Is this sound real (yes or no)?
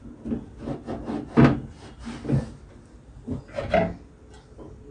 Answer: yes